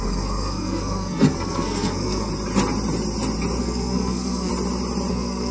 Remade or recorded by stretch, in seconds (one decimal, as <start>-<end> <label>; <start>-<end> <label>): 0.0-2.3 remade; 2.3-3.6 recorded; 3.6-4.5 remade; 4.5-5.1 recorded; 5.1-5.5 remade